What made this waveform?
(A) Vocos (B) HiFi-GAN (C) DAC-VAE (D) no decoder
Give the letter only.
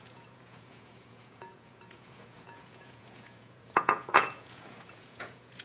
A